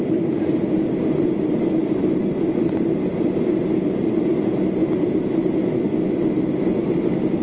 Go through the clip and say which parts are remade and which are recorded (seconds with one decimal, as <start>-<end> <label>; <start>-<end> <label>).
0.0-0.4 remade; 0.4-1.2 recorded; 1.2-3.1 remade; 3.1-4.1 recorded; 4.1-5.5 remade; 5.5-7.4 recorded